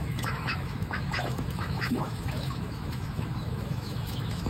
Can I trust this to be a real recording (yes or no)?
no